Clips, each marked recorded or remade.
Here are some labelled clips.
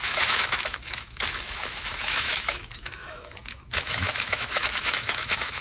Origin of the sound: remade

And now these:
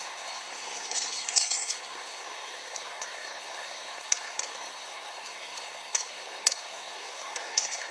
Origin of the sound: remade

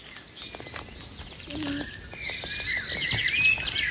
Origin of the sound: recorded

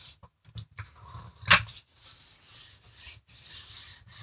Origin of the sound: recorded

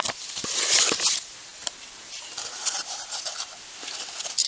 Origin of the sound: recorded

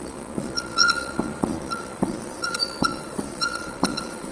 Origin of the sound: remade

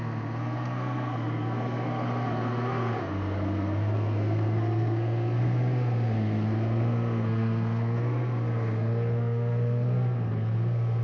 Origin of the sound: remade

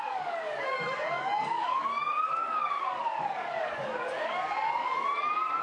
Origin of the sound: remade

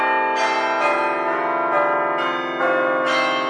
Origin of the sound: recorded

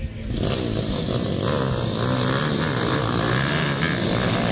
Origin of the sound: recorded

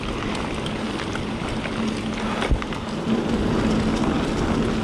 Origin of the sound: recorded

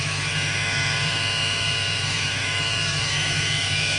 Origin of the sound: remade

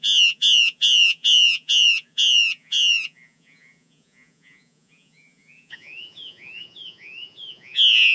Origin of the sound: remade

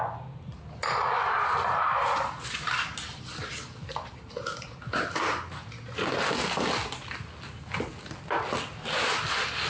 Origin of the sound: recorded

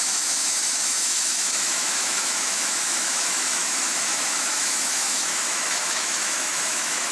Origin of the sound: remade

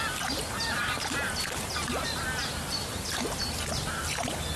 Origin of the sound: recorded